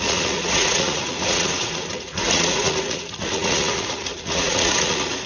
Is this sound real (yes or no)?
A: no